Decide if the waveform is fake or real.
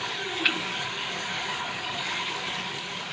fake